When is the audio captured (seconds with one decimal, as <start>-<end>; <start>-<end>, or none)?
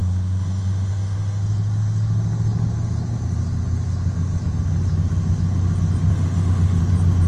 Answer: 1.4-6.1; 6.8-7.3